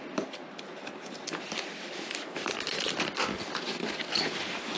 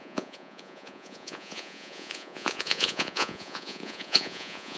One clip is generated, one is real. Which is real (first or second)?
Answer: first